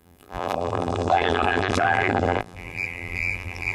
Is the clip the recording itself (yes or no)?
no